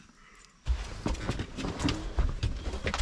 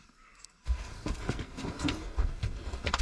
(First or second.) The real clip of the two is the first